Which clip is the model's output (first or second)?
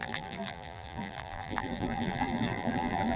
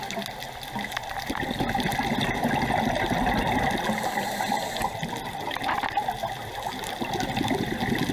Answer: first